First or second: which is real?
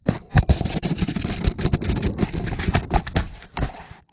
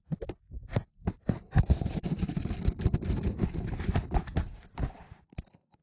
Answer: second